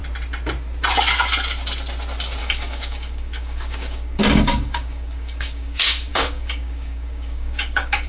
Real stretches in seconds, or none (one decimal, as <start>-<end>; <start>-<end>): 0.0-2.4